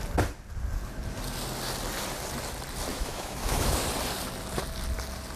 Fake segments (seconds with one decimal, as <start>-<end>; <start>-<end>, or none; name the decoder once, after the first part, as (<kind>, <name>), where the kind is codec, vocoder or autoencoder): 2.9-3.8 (autoencoder, DAC-VAE)